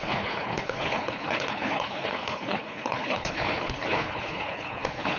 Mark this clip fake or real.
fake